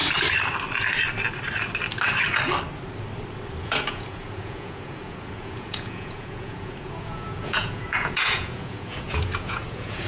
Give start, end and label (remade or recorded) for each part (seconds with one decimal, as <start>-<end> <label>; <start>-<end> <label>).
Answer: 0.0-3.6 recorded; 3.6-10.1 remade